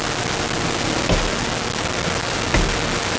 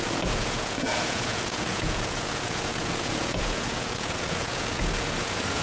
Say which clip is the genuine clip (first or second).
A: first